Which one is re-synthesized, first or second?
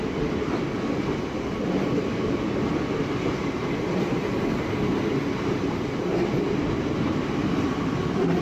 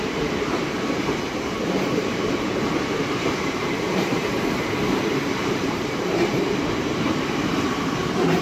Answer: second